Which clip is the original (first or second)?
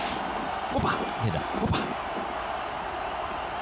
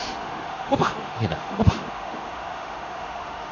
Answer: first